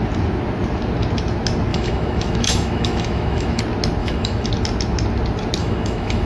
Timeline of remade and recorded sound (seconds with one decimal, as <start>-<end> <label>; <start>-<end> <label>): 0.0-1.7 recorded; 1.7-3.6 remade; 3.6-4.0 recorded; 4.0-4.5 remade; 4.5-5.6 recorded; 5.6-6.3 remade